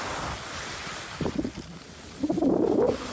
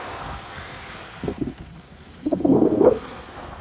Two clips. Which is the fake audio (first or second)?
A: second